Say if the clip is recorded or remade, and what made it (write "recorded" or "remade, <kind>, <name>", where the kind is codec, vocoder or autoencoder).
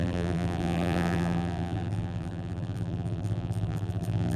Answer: remade, vocoder, BigVGAN v2